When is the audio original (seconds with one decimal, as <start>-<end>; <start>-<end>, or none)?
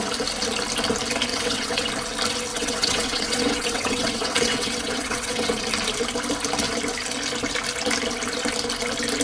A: 0.0-1.3; 1.9-2.5; 5.6-9.2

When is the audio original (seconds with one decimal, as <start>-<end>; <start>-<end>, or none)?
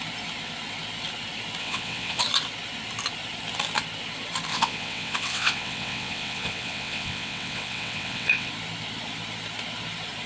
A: 0.0-1.6; 2.2-4.5; 8.5-10.3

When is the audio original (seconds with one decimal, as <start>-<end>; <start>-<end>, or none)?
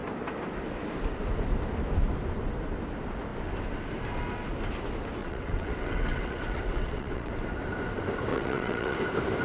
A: 0.0-5.2; 7.3-8.3; 9.0-9.4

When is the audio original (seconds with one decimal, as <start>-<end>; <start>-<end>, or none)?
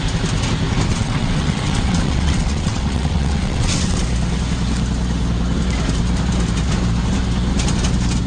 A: 0.0-0.9; 4.0-8.3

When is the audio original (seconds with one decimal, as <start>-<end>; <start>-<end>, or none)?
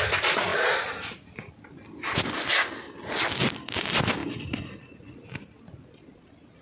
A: 0.0-6.6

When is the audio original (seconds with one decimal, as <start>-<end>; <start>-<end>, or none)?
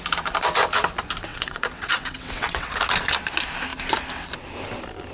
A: 0.0-1.3; 2.7-5.1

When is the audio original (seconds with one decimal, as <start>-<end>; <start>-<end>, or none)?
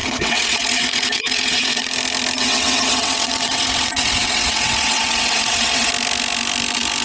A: 1.9-2.4; 5.9-7.0